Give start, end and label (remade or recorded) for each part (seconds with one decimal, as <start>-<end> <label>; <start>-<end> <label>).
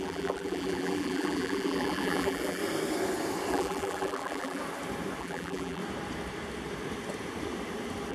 0.0-2.6 remade; 2.6-3.5 recorded; 3.5-4.6 remade; 4.6-5.2 recorded; 5.2-5.8 remade; 5.8-8.1 recorded